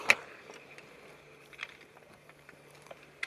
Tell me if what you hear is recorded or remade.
remade